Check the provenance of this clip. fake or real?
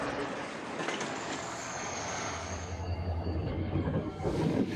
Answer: fake